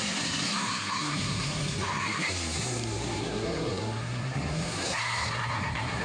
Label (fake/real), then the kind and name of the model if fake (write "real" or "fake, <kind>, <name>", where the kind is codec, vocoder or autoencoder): fake, codec, SNAC